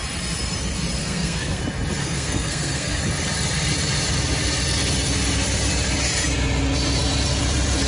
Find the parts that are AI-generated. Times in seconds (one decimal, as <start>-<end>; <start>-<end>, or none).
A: 1.0-1.6; 2.0-3.0